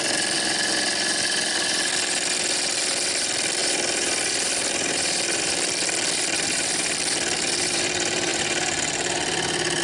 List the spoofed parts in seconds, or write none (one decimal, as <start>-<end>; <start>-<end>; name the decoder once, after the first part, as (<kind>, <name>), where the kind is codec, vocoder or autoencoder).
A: none